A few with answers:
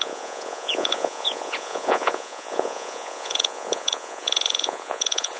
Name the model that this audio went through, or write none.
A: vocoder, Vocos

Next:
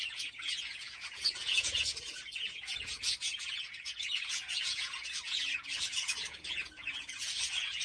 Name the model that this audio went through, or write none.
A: vocoder, Vocos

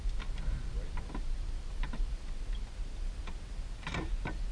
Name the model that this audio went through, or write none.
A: none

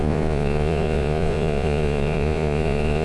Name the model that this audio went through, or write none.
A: vocoder, Vocos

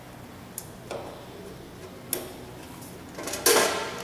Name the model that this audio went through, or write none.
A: none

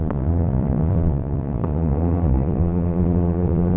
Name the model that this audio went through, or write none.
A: vocoder, Vocos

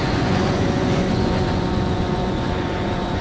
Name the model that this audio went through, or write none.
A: vocoder, Vocos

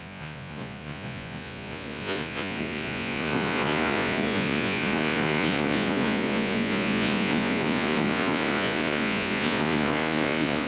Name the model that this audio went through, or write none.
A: vocoder, Vocos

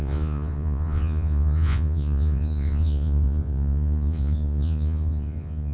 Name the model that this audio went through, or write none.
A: vocoder, Vocos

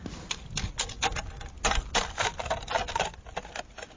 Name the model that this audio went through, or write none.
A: none